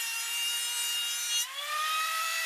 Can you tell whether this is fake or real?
fake